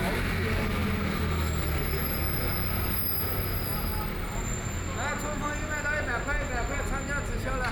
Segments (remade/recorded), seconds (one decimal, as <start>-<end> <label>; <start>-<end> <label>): 0.0-2.0 recorded; 2.0-2.8 remade; 2.8-7.7 recorded